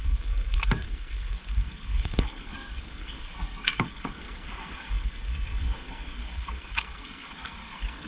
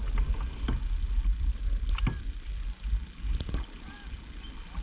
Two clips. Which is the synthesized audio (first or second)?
first